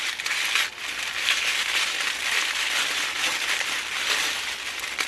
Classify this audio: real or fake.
fake